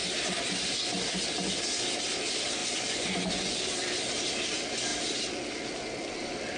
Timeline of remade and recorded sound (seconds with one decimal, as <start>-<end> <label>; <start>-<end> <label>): 0.0-2.6 recorded; 2.6-3.6 remade; 3.6-6.6 recorded